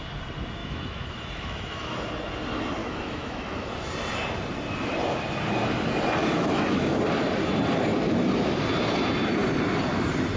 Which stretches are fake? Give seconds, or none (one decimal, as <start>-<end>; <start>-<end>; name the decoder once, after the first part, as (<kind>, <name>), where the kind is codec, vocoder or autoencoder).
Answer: 0.6-1.9 (autoencoder, DAC-VAE); 2.8-3.7; 6.2-7.0